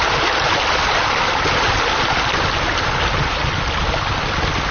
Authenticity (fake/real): real